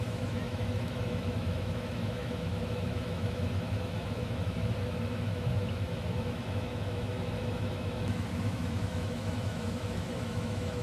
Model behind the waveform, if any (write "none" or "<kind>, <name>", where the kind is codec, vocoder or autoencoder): autoencoder, DAC-VAE